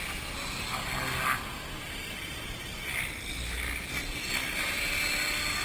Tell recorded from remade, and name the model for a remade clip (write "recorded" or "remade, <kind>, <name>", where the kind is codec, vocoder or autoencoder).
recorded